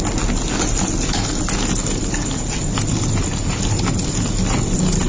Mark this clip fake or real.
real